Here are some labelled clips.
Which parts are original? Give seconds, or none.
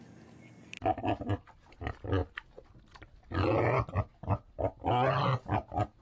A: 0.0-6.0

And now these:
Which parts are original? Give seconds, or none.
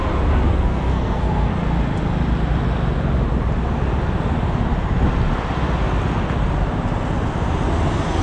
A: 0.0-0.5; 1.5-8.2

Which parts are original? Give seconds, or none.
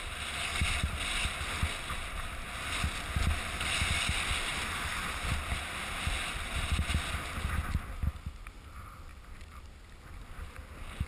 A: 0.0-11.1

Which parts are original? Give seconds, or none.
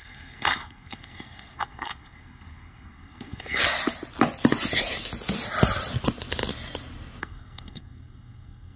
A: 3.6-7.2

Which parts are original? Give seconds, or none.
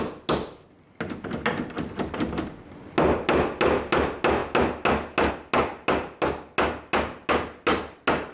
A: 0.0-8.3